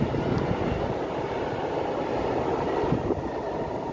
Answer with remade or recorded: recorded